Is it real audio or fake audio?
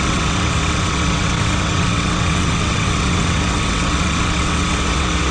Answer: fake